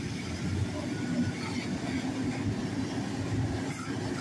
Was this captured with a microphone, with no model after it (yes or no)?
yes